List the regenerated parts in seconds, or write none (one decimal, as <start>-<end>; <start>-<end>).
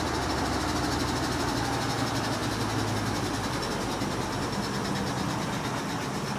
none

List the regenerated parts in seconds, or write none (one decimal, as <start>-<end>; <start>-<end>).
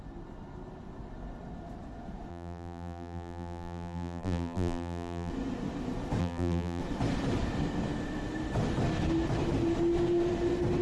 2.3-5.3; 6.2-6.8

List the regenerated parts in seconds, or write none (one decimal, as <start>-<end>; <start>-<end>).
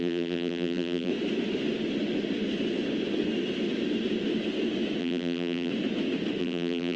0.0-1.1; 5.0-5.7; 6.4-7.0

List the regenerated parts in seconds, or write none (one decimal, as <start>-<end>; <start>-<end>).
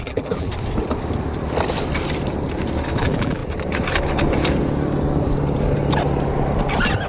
0.0-0.5; 3.0-3.4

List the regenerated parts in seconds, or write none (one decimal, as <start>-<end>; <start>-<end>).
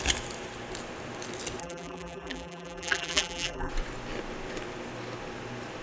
1.6-3.7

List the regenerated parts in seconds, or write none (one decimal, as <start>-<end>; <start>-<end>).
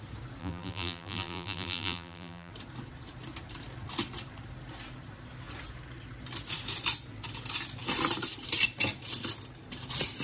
0.4-2.5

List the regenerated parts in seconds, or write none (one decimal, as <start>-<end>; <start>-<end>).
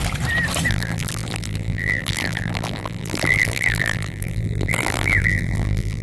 0.7-6.0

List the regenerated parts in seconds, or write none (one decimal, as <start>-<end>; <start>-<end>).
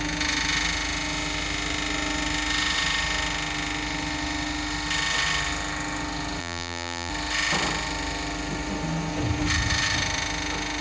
6.4-7.1